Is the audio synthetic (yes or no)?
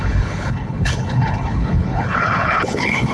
yes